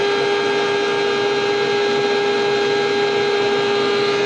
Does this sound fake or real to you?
real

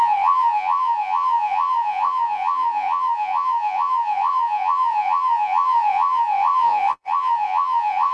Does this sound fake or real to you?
fake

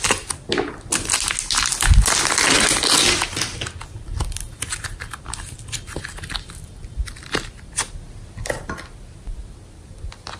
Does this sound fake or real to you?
real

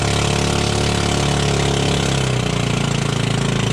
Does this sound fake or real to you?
real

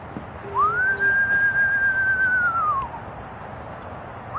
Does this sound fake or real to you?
real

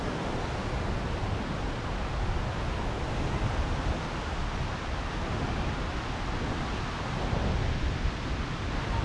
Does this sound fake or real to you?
real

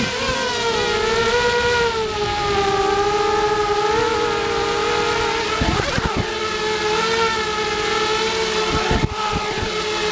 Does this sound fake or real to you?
real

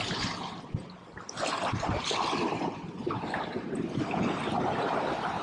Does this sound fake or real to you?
real